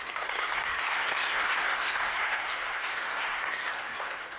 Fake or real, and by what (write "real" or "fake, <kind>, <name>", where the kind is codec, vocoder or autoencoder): fake, codec, SNAC